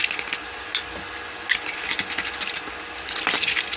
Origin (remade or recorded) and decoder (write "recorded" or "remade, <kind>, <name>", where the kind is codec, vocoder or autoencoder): recorded